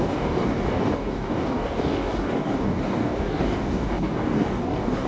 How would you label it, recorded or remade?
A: remade